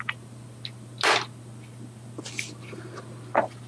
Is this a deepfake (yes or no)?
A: no